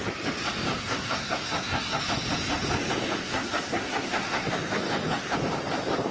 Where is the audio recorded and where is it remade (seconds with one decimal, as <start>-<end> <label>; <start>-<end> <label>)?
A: 0.0-0.7 recorded; 0.7-2.0 remade; 2.0-3.2 recorded; 3.2-4.5 remade; 4.5-6.1 recorded

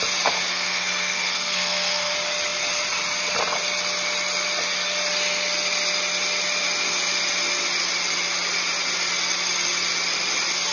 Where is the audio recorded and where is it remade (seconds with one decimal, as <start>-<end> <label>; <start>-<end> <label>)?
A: 0.0-0.5 recorded; 0.5-2.1 remade; 2.1-10.7 recorded

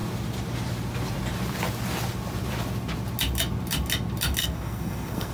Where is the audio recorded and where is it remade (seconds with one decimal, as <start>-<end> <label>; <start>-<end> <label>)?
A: 0.0-4.4 recorded; 4.4-5.3 remade

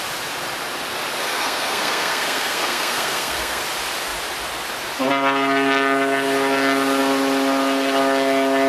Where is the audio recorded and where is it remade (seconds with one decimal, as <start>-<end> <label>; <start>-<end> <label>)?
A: 0.0-1.2 recorded; 1.2-3.6 remade; 3.6-8.7 recorded

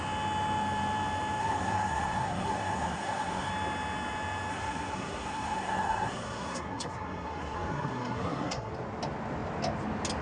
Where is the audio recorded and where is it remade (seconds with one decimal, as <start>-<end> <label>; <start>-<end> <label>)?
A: 0.0-1.4 recorded; 1.4-3.5 remade; 3.5-4.5 recorded; 4.5-8.7 remade; 8.7-10.2 recorded

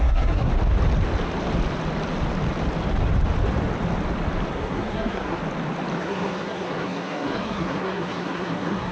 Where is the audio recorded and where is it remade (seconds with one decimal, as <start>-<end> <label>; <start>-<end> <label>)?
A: 0.0-0.5 remade; 0.5-4.5 recorded; 4.5-5.4 remade; 5.4-6.0 recorded; 6.0-8.9 remade

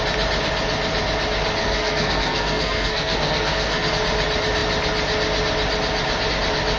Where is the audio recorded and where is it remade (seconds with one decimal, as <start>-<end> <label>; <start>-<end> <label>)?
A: 0.0-1.6 recorded; 1.6-3.9 remade; 3.9-6.8 recorded

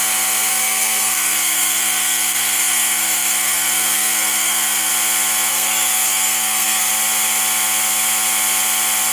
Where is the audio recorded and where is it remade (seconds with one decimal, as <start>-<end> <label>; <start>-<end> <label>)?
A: 0.0-0.5 recorded; 0.5-4.9 remade; 4.9-5.5 recorded; 5.5-6.9 remade; 6.9-9.1 recorded